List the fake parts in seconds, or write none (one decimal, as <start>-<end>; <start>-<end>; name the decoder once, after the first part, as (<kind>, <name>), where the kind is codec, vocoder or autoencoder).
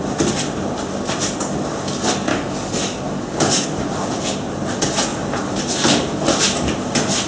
2.3-3.8 (codec, DAC)